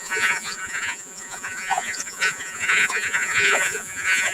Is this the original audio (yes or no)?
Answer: no